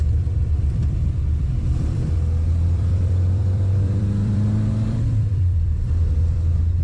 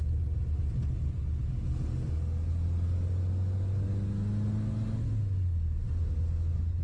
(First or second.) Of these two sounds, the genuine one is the second